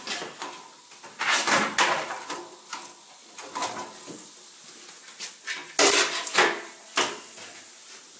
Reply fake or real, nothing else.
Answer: real